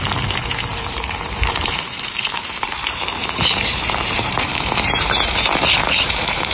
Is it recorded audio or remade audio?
remade